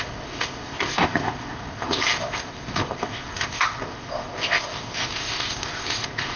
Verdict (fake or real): fake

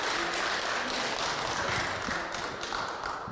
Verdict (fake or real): real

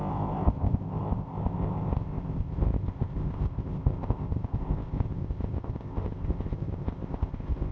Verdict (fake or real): fake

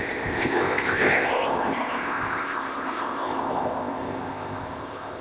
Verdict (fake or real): fake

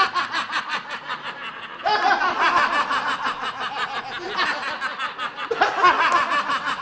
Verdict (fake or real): real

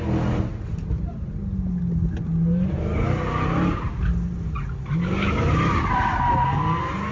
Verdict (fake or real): real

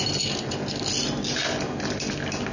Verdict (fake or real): real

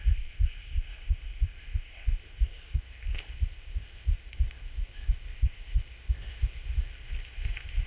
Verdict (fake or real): fake